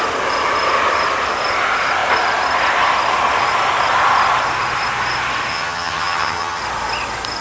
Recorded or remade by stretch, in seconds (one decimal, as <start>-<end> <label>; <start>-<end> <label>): 0.0-5.5 recorded; 5.5-6.6 remade; 6.6-7.4 recorded